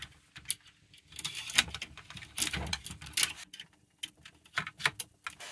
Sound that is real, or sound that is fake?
real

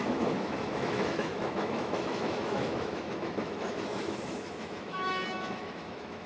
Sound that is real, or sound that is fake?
fake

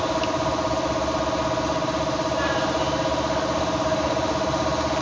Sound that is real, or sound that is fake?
real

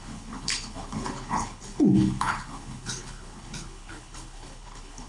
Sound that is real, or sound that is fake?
fake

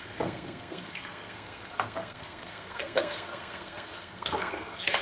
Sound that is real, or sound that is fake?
fake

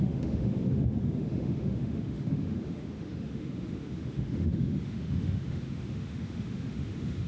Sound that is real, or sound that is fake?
fake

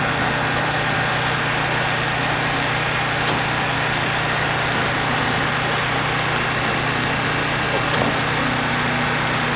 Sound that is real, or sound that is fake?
real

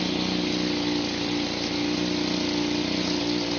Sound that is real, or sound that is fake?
real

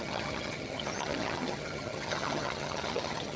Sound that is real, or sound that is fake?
fake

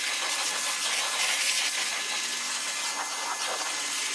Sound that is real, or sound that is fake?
real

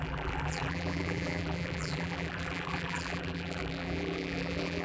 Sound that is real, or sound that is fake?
fake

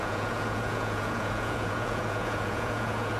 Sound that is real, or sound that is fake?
fake